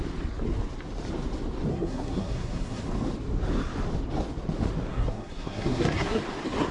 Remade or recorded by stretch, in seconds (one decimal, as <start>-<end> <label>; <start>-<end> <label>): 0.0-1.7 recorded; 1.7-2.8 remade; 2.8-4.9 recorded; 4.9-6.2 remade; 6.2-6.7 recorded